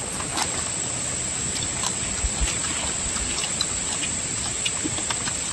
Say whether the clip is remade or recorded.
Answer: recorded